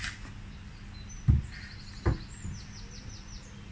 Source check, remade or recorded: recorded